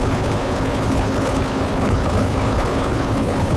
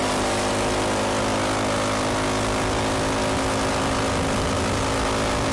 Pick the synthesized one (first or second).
first